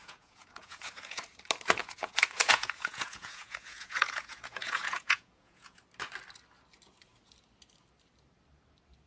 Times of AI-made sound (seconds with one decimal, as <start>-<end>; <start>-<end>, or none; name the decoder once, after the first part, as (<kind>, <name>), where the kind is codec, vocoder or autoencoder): 0.0-1.2 (vocoder, Vocos); 1.8-5.8